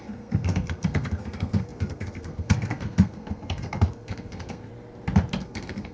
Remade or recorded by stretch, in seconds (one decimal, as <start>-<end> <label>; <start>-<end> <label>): 0.0-4.7 remade; 4.7-5.4 recorded; 5.4-5.9 remade